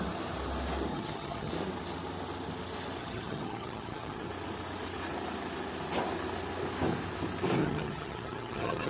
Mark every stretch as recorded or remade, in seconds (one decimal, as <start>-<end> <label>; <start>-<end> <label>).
0.0-0.9 recorded; 0.9-1.5 remade; 1.5-3.0 recorded; 3.0-4.3 remade; 4.3-7.6 recorded; 7.6-8.9 remade